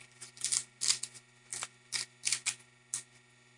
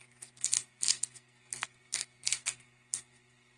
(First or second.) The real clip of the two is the first